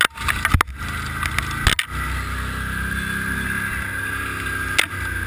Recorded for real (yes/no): yes